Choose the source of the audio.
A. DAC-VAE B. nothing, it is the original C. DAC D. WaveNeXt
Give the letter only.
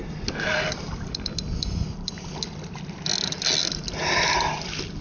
B